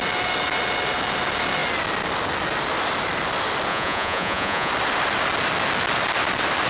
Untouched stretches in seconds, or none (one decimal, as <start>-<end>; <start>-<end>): 0.0-3.7; 4.7-6.7